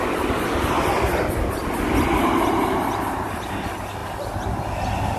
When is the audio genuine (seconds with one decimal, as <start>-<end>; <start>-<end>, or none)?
0.0-5.2